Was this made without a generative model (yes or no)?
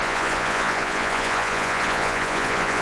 no